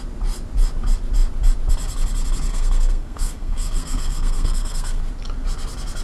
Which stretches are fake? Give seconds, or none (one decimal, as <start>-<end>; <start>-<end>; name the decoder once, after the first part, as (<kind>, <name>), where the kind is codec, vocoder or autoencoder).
2.5-5.0 (codec, SNAC)